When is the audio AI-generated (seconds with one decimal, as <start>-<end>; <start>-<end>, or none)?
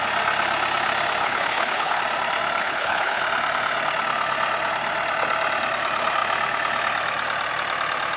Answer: 1.2-2.0; 2.6-3.2